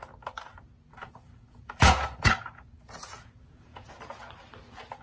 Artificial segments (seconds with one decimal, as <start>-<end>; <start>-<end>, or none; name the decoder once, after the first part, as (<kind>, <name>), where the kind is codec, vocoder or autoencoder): 0.9-3.9 (vocoder, Vocos)